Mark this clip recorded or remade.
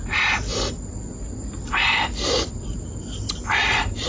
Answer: recorded